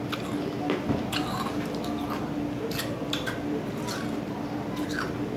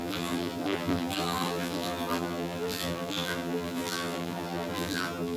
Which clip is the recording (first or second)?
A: first